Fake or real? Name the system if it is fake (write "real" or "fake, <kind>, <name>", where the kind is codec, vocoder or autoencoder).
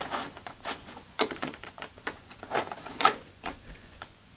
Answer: fake, vocoder, Vocos